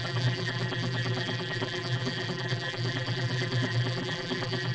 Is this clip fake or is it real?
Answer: fake